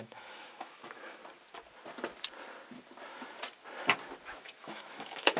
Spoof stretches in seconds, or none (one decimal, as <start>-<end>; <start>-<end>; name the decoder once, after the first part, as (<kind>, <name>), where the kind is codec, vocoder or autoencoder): 0.0-1.2 (autoencoder, DAC-VAE); 4.4-5.4